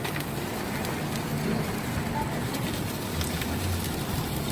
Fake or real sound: real